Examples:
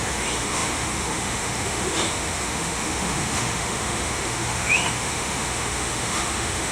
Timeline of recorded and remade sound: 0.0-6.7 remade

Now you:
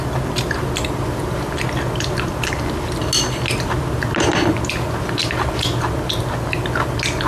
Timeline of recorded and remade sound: 0.0-7.3 recorded

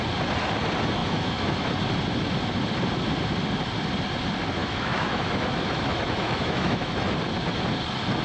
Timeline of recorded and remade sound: 0.0-1.0 recorded; 1.0-1.7 remade; 1.7-4.6 recorded; 4.6-7.1 remade; 7.1-8.2 recorded

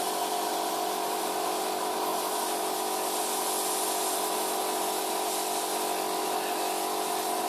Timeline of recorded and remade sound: 0.0-7.5 recorded

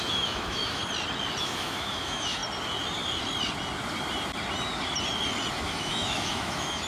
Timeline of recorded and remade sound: 0.0-0.8 remade; 0.8-1.4 recorded; 1.4-2.4 remade; 2.4-5.5 recorded; 5.5-6.9 remade